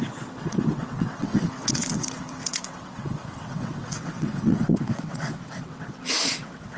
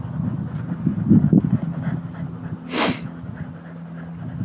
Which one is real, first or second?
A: second